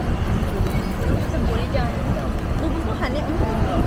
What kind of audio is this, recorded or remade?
recorded